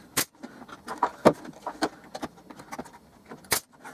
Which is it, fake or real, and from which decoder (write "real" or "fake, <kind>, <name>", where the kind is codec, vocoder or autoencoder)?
real